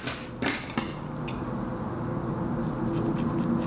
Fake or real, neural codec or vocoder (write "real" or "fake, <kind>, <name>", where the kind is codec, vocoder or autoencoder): real